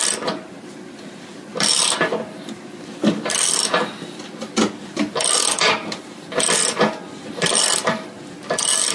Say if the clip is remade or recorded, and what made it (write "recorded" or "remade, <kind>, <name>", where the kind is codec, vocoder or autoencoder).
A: remade, vocoder, BigVGAN v2